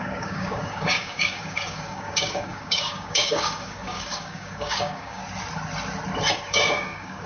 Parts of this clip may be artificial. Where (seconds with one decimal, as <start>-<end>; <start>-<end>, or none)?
0.0-5.2; 6.3-7.3